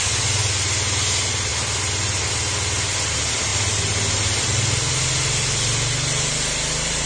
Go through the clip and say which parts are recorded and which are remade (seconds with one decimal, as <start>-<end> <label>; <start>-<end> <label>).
0.0-7.1 recorded